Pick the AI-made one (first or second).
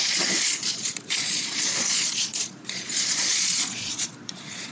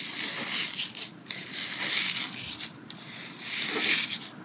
first